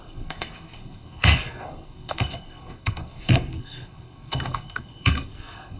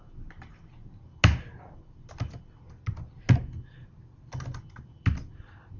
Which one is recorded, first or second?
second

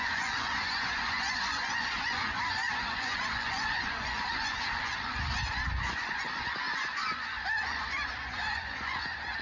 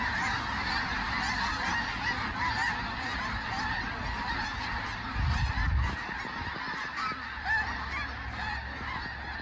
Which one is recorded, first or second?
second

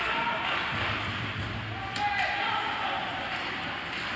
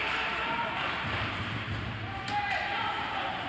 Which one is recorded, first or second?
first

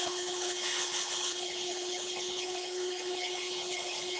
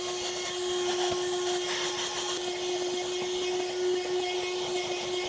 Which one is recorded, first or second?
second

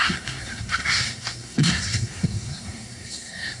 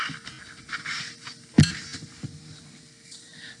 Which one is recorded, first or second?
second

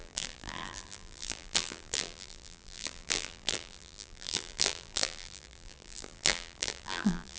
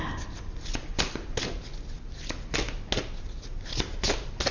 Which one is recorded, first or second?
second